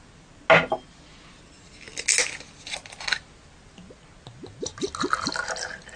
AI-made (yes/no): no